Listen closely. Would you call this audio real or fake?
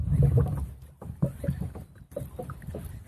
real